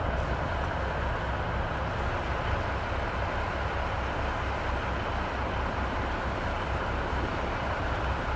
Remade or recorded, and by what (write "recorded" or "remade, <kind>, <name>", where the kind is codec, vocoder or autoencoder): recorded